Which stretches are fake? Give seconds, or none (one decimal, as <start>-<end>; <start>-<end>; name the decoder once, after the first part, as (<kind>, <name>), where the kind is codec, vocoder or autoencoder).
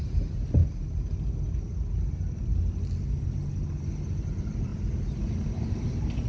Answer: 0.0-0.6 (vocoder, BigVGAN v2); 4.2-4.7; 5.7-6.3